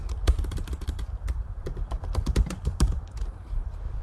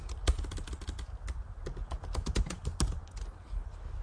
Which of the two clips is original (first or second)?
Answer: second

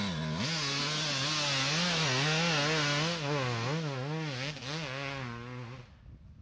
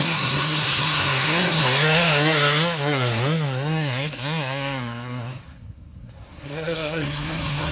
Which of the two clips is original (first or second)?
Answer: first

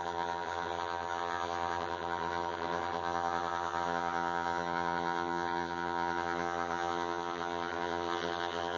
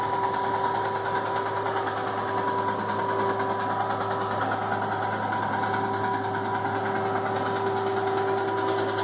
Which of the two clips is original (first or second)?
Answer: second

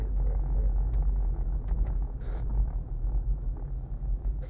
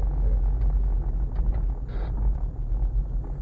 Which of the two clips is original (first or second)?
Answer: second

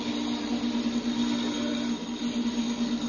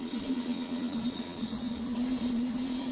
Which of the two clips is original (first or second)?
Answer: first